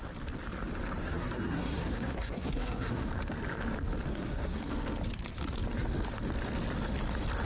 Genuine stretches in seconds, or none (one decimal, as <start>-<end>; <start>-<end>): 0.0-1.0; 3.1-4.1; 4.6-7.4